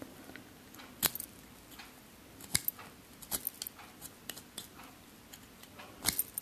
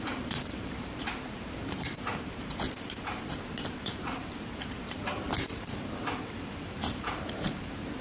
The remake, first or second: second